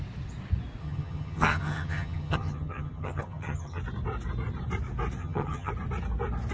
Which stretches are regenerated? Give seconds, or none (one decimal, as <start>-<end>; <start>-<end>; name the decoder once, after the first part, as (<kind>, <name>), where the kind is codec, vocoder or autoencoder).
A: 0.8-3.8 (vocoder, HiFi-GAN); 5.2-5.7